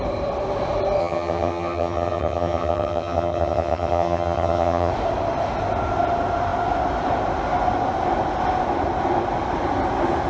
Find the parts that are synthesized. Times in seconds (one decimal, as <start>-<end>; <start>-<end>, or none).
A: 1.0-4.9